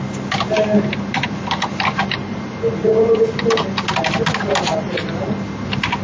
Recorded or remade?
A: recorded